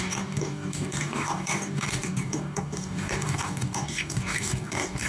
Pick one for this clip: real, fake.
fake